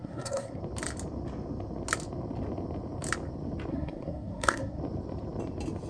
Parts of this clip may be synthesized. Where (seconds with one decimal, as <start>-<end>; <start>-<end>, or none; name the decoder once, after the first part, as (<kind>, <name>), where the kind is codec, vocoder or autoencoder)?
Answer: 0.0-0.6 (codec, SNAC); 3.7-4.8